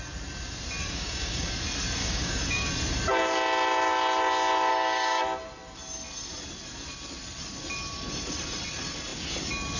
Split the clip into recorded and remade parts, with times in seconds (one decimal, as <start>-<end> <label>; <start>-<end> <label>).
0.0-0.8 recorded; 0.8-1.5 remade; 1.5-2.0 recorded; 2.0-2.7 remade; 2.7-4.7 recorded; 4.7-5.2 remade; 5.2-9.8 recorded